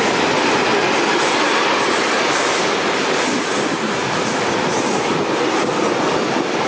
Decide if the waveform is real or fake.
real